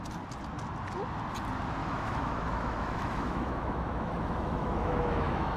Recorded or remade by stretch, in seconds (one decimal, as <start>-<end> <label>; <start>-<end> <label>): 0.0-1.8 recorded; 1.8-5.6 remade